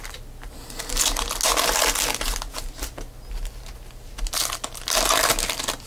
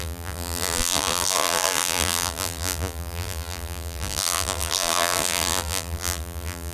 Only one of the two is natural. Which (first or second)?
first